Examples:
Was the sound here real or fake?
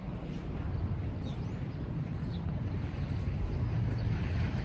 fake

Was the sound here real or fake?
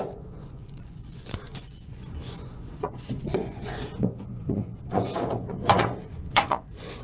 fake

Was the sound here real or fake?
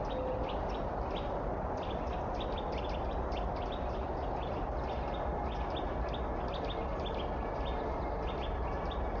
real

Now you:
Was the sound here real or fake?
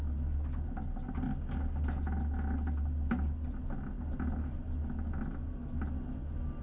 real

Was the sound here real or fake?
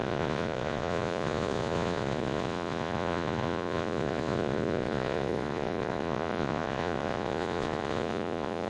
fake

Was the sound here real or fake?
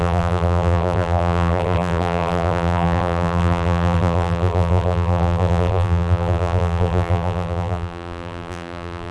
fake